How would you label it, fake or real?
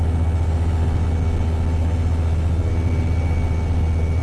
real